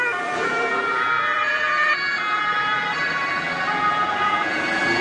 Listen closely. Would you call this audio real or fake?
fake